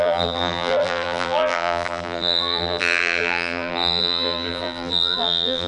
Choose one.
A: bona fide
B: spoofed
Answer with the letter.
B